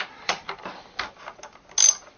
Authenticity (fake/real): real